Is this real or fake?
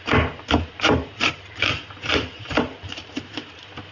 fake